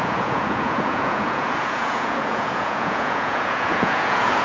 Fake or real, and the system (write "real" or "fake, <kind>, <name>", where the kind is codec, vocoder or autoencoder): fake, vocoder, Vocos